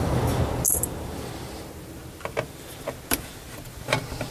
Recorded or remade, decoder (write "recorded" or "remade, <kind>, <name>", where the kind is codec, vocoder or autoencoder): recorded